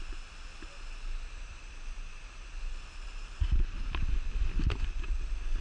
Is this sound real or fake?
real